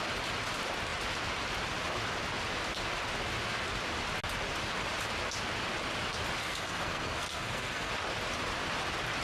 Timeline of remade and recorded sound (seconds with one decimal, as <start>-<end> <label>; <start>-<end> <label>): 0.0-6.4 recorded; 6.4-7.9 remade; 7.9-9.2 recorded

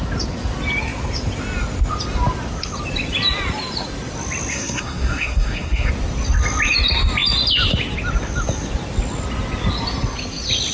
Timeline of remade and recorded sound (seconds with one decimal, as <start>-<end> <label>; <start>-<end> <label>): 0.0-4.5 recorded; 4.5-5.9 remade; 5.9-10.7 recorded

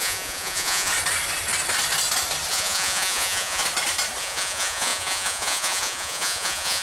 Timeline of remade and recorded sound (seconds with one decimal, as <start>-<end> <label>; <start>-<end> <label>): 0.0-0.9 remade; 0.9-2.5 recorded; 2.5-3.6 remade; 3.6-4.2 recorded; 4.2-6.8 remade

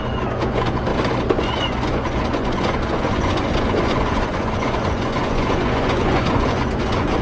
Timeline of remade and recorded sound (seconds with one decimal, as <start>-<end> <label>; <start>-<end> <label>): 0.0-0.9 remade; 0.9-1.4 recorded; 1.4-7.2 remade

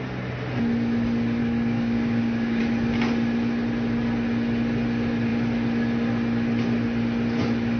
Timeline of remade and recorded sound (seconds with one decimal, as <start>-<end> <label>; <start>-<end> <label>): 0.0-1.4 recorded; 1.4-2.6 remade; 2.6-7.8 recorded

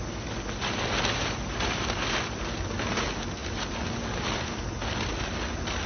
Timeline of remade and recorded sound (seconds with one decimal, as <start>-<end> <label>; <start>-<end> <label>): 0.0-5.9 recorded